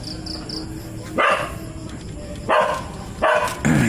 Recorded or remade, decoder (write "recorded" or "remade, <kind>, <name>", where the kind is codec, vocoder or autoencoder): recorded